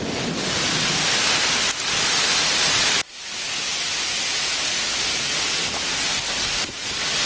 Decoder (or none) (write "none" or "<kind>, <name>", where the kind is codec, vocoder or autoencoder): none